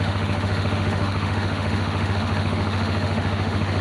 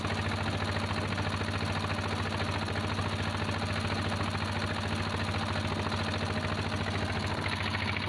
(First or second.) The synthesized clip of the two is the first